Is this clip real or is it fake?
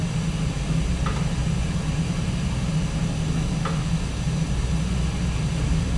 real